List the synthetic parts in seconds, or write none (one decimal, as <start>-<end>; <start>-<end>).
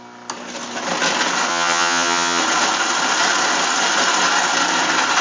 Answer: 1.5-2.4